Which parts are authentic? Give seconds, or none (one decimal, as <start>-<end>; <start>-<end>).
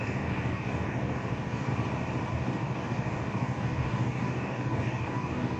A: 1.7-2.3